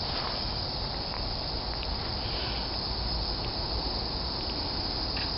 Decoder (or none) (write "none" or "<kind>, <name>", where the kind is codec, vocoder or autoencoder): vocoder, BigVGAN v2